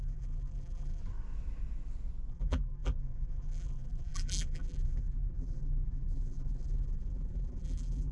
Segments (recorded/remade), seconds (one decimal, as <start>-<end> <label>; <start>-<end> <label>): 0.0-1.0 remade; 1.0-2.3 recorded; 2.3-8.1 remade